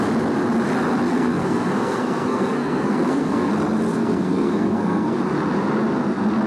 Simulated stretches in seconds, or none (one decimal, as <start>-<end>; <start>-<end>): 1.1-3.5; 3.9-5.2